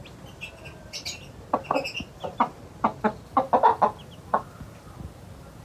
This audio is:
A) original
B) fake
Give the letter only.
A